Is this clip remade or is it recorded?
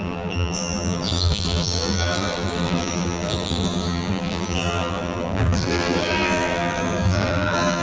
remade